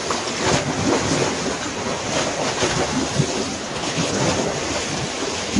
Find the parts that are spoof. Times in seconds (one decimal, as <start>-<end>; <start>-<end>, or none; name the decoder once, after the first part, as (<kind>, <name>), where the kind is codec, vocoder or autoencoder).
3.6-4.2 (codec, HILCodec)